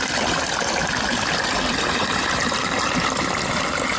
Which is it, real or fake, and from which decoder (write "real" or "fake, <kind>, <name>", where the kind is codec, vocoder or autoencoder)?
fake, vocoder, BigVGAN v2